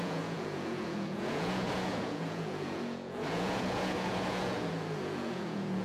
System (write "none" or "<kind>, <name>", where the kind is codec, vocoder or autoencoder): vocoder, Vocos